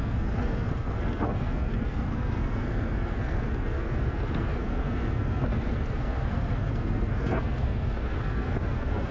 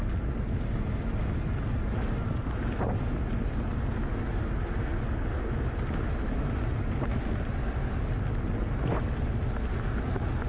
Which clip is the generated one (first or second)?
first